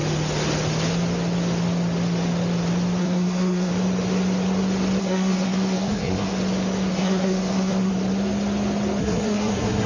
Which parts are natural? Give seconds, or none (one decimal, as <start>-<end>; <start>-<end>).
0.0-3.0; 3.7-5.0; 6.3-6.9; 7.9-9.0